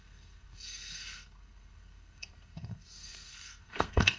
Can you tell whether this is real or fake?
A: fake